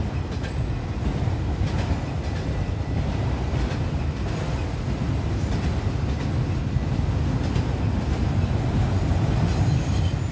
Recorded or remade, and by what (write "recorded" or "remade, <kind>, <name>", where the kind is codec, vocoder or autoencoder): recorded